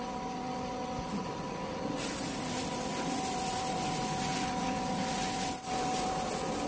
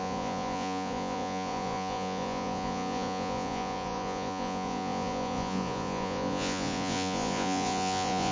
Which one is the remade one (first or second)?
second